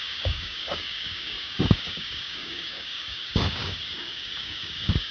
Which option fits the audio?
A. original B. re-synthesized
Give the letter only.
B